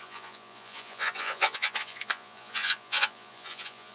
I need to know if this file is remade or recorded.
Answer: remade